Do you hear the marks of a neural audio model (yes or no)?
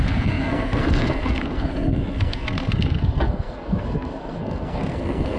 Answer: yes